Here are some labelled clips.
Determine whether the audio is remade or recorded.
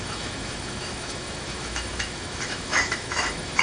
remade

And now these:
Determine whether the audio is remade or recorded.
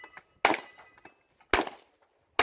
recorded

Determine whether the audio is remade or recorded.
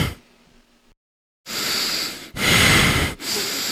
recorded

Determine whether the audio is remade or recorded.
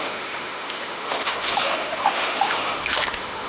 remade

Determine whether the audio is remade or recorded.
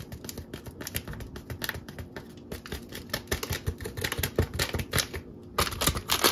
recorded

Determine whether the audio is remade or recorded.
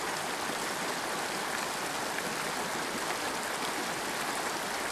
recorded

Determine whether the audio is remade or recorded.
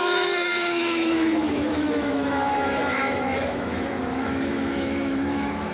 remade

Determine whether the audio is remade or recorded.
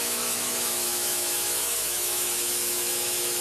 remade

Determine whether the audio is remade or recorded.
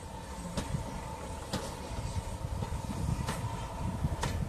recorded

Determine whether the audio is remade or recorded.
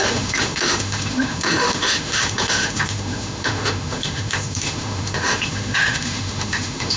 remade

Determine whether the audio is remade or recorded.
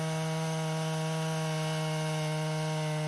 recorded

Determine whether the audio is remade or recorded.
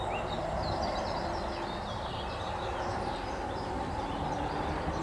recorded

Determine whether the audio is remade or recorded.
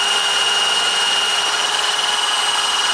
recorded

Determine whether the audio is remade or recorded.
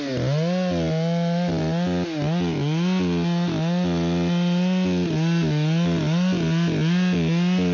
recorded